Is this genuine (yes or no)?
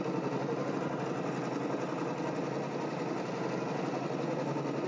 yes